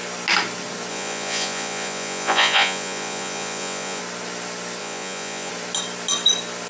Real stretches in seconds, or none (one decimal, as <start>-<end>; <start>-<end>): 0.0-0.9; 4.0-4.8; 5.5-6.7